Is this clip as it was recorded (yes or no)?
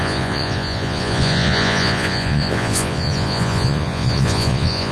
no